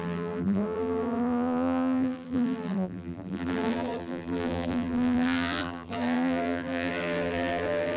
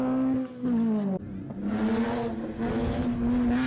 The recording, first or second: second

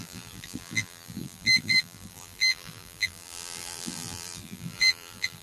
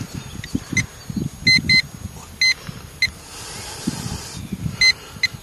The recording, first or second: second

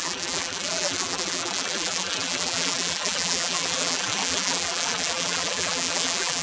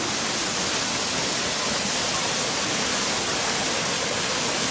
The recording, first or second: second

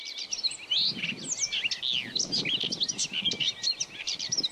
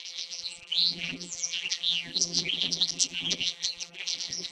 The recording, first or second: first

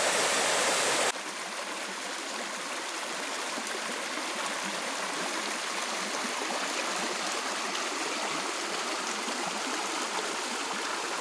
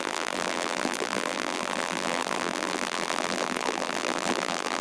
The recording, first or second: first